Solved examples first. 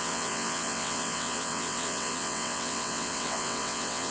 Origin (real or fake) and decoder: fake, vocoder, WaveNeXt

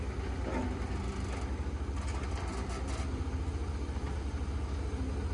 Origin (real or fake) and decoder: real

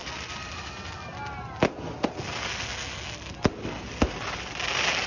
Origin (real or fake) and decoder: real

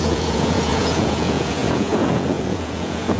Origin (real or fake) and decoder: fake, vocoder, Vocos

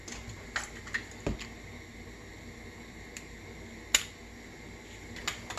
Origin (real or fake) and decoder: real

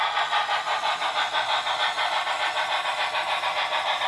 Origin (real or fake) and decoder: real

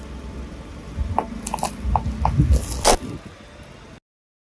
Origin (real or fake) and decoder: real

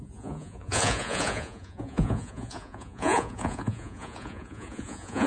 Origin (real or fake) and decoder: fake, vocoder, Vocos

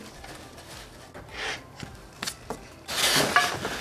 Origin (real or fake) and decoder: real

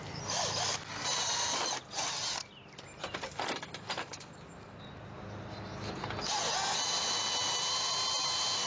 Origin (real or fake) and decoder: real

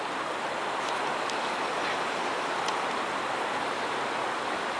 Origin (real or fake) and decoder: real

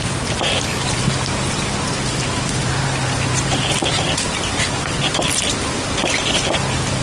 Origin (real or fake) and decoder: fake, vocoder, BigVGAN v2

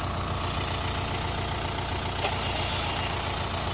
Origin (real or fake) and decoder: real